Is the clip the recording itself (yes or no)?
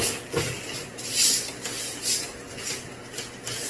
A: yes